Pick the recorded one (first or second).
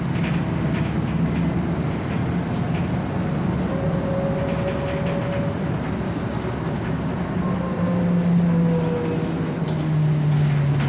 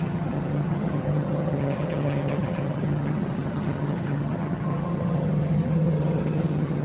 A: first